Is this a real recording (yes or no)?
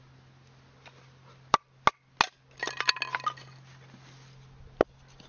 yes